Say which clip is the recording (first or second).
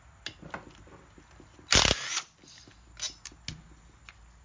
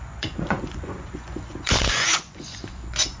first